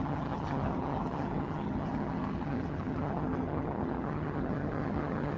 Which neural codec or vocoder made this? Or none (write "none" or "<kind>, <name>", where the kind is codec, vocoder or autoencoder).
vocoder, HiFi-GAN